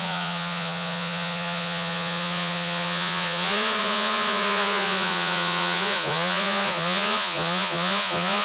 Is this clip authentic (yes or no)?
no